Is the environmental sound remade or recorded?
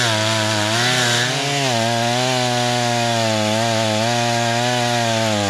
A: recorded